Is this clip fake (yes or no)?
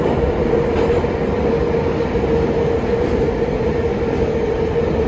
no